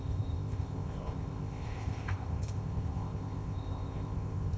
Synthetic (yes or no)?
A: yes